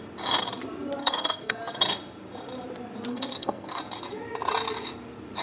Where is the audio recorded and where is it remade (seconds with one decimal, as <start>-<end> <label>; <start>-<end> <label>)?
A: 0.0-1.0 recorded; 1.0-1.6 remade; 1.6-3.1 recorded; 3.1-3.8 remade; 3.8-5.4 recorded